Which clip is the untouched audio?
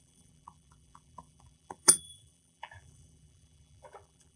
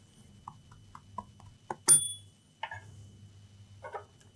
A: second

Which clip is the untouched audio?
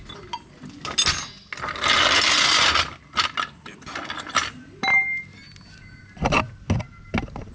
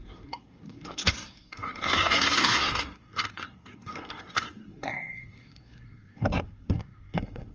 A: first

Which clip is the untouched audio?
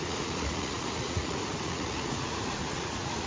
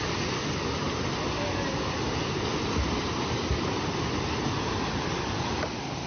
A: second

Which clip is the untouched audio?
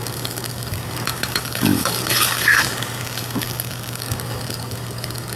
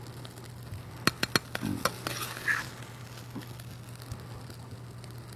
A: second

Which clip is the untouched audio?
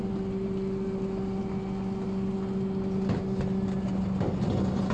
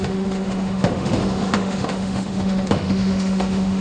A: first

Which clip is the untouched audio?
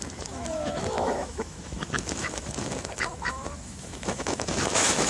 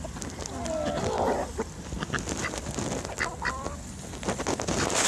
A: second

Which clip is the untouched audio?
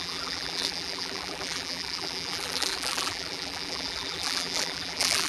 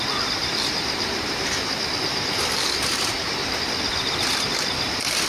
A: second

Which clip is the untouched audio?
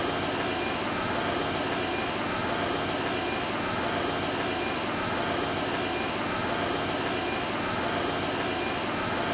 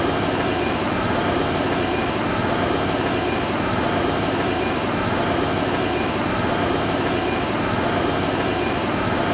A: first